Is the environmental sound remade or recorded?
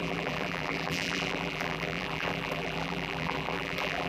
remade